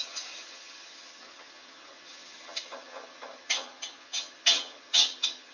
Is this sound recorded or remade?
remade